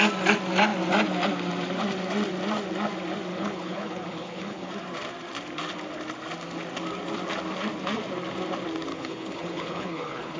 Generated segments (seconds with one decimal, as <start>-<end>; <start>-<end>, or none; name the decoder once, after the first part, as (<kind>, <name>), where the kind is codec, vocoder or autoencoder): 3.3-4.7 (codec, HILCodec); 8.9-10.4